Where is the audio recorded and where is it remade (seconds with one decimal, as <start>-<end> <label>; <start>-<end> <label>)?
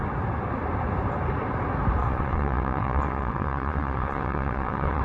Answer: 0.0-2.0 recorded; 2.0-5.0 remade